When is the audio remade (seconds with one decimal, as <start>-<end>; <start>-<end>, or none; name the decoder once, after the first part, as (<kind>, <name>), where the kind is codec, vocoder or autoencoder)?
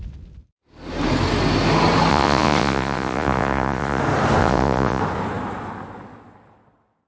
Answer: 2.1-4.0 (vocoder, Vocos); 4.4-5.0